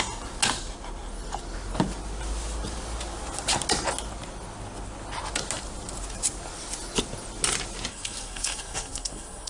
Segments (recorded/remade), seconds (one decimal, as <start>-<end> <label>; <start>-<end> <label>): 0.0-7.9 recorded; 7.9-9.5 remade